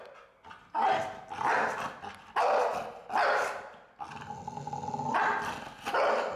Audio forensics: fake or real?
real